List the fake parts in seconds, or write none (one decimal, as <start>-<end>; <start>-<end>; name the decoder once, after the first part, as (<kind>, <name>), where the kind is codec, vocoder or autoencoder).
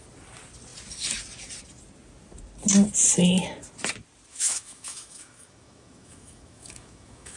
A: 4.3-7.4 (autoencoder, DAC-VAE)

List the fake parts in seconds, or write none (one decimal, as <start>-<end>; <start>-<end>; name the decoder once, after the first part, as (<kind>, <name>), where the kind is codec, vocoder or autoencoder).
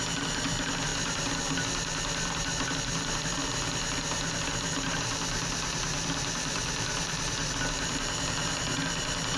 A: none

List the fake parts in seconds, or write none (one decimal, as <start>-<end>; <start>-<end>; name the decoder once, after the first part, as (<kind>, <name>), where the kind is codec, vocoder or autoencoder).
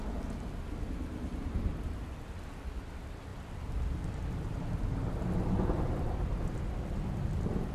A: none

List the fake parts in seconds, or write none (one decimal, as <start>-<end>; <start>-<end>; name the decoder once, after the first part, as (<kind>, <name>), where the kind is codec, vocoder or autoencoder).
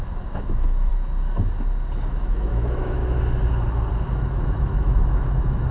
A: 0.0-0.9 (autoencoder, DAC-VAE); 2.1-3.0; 4.2-5.7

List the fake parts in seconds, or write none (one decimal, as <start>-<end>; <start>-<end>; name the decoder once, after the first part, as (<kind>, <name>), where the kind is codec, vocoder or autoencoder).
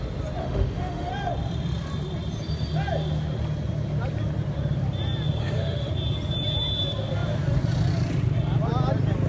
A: 0.4-1.1 (autoencoder, DAC-VAE); 5.4-5.9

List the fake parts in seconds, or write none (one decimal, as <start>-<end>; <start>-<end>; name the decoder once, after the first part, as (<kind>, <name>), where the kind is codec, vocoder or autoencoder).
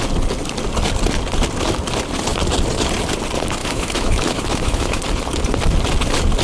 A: 3.6-5.0 (autoencoder, DAC-VAE)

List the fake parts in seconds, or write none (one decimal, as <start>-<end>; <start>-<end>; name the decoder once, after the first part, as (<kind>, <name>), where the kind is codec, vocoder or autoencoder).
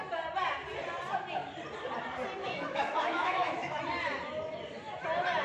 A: 2.4-3.8 (autoencoder, DAC-VAE)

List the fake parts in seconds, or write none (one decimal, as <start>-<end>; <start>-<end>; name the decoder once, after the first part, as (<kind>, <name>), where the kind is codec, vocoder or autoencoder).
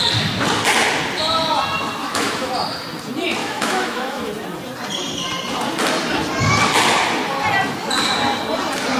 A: 2.0-2.5 (autoencoder, DAC-VAE); 3.4-4.3